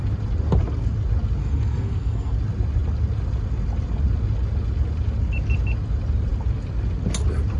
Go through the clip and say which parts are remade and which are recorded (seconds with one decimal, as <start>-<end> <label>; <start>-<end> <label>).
0.0-1.4 recorded; 1.4-2.3 remade; 2.3-7.6 recorded